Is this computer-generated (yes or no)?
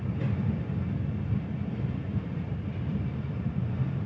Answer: yes